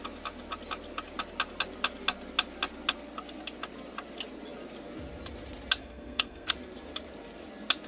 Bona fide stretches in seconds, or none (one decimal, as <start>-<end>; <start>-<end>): 0.0-5.8; 6.5-7.9